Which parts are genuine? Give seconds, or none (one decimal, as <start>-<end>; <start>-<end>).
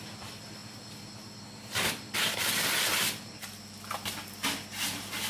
0.0-5.3